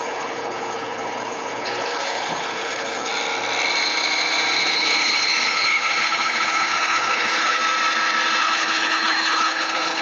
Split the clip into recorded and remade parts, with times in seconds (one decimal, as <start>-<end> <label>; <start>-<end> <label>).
0.0-3.1 remade; 3.1-4.6 recorded; 4.6-7.6 remade; 7.6-8.4 recorded; 8.4-10.0 remade